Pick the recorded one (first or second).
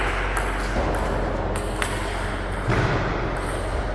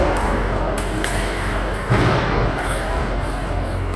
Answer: first